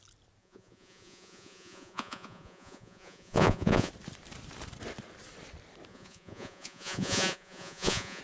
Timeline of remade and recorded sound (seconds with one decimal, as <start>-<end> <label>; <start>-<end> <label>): 0.0-0.4 recorded; 0.4-3.9 remade; 3.9-5.9 recorded; 5.9-8.2 remade